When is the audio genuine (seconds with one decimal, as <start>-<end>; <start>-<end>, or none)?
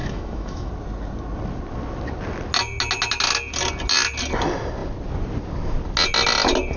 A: 0.7-6.8